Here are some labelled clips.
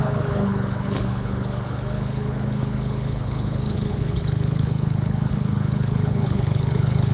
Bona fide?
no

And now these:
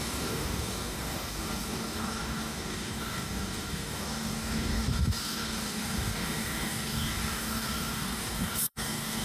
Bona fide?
no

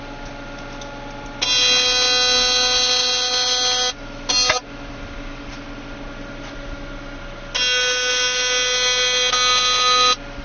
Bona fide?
yes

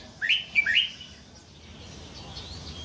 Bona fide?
yes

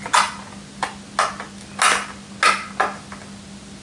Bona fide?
yes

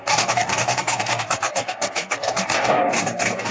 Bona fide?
no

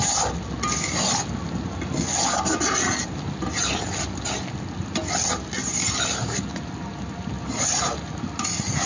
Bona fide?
yes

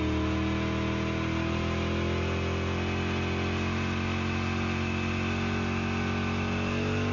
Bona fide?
yes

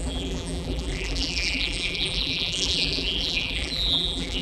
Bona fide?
no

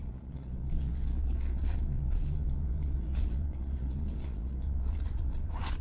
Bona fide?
no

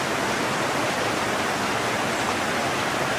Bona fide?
yes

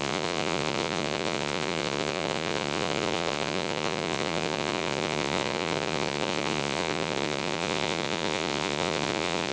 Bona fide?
no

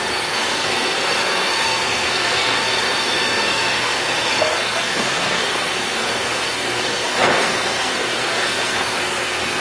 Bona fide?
no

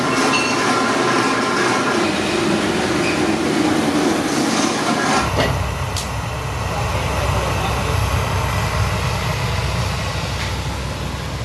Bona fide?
yes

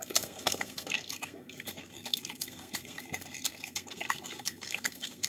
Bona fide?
no